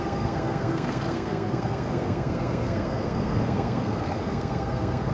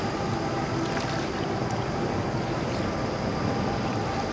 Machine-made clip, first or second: first